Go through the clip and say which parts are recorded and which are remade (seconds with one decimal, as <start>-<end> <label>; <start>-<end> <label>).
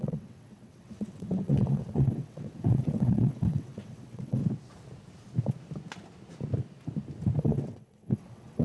0.0-4.4 remade; 4.4-7.4 recorded; 7.4-8.6 remade